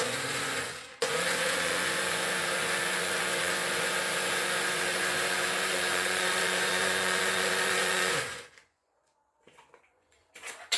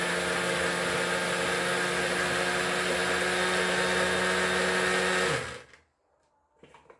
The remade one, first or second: first